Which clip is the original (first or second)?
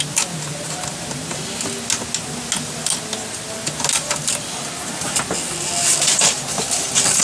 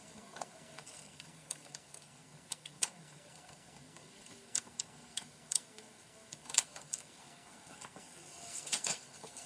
first